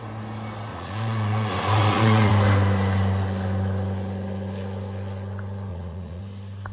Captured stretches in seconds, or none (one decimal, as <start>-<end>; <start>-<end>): 0.0-0.7; 2.3-5.7; 6.2-6.7